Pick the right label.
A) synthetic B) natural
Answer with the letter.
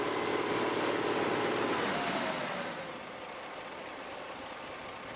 B